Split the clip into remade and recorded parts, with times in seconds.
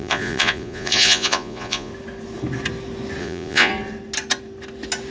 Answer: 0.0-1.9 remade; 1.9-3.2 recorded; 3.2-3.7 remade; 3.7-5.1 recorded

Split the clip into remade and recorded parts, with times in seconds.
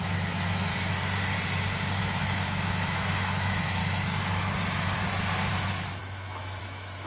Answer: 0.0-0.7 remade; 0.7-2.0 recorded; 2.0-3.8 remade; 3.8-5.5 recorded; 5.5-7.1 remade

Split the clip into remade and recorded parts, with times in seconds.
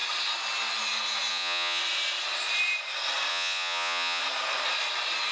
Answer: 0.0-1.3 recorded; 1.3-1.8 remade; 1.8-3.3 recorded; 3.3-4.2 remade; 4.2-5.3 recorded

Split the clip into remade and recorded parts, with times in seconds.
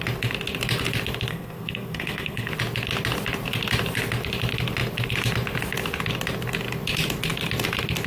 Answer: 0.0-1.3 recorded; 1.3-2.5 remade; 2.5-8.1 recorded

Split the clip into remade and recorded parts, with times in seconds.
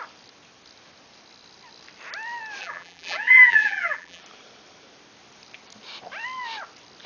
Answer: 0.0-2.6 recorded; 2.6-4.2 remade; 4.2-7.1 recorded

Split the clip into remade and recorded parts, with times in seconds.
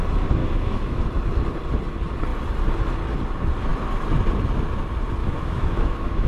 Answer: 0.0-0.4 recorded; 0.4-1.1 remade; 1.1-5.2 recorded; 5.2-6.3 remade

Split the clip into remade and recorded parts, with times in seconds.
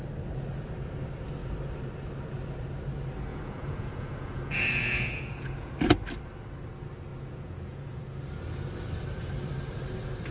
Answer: 0.0-3.3 recorded; 3.3-5.7 remade; 5.7-7.1 recorded; 7.1-8.0 remade; 8.0-10.3 recorded